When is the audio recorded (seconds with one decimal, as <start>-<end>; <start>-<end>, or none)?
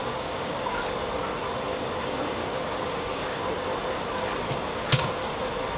0.7-2.4; 3.4-4.7; 5.2-5.8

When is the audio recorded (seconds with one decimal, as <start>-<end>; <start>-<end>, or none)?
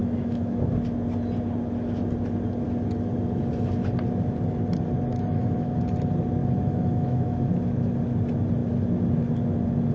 0.7-5.1; 5.8-6.4; 7.5-9.9